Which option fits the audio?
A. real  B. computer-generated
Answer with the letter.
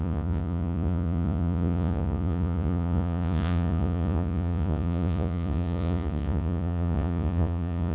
B